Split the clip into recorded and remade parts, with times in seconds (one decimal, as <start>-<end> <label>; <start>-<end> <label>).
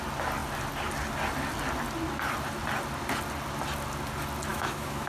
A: 0.0-4.5 recorded; 4.5-5.1 remade